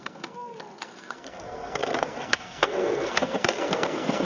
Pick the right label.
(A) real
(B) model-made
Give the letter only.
B